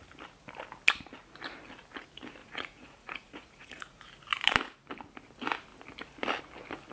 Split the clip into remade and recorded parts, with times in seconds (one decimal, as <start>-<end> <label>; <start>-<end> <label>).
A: 0.0-2.4 recorded; 2.4-4.0 remade; 4.0-6.9 recorded